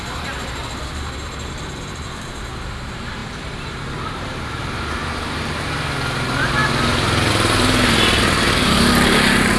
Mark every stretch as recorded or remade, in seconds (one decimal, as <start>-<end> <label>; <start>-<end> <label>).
0.0-6.6 remade; 6.6-7.3 recorded; 7.3-9.6 remade